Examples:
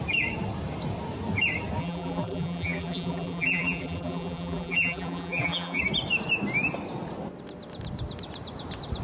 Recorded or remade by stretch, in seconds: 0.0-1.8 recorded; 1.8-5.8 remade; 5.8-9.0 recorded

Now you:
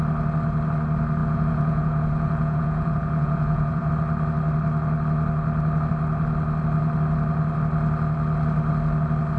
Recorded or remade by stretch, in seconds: 0.0-1.2 recorded; 1.2-3.9 remade; 3.9-9.4 recorded

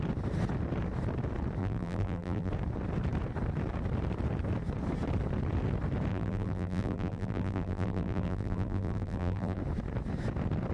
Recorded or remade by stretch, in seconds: 0.0-1.6 recorded; 1.6-2.5 remade; 2.5-6.1 recorded; 6.1-9.6 remade; 9.6-10.7 recorded

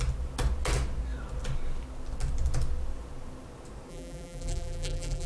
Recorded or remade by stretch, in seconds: 0.0-3.9 recorded; 3.9-5.3 remade

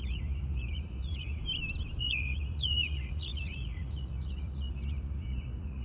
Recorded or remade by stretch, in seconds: 0.0-1.4 remade; 1.4-2.0 recorded; 2.0-5.8 remade

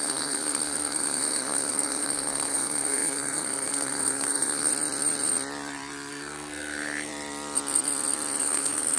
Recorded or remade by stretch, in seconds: 0.0-4.7 remade; 4.7-6.1 recorded; 6.1-7.1 remade; 7.1-8.4 recorded; 8.4-9.0 remade

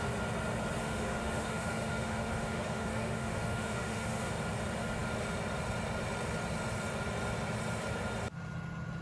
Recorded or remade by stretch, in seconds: 0.0-0.8 recorded; 0.8-4.3 remade; 4.3-9.0 recorded

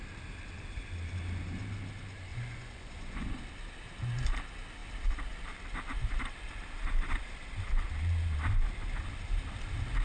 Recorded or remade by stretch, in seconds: 0.0-2.3 recorded; 2.3-3.3 remade; 3.3-10.0 recorded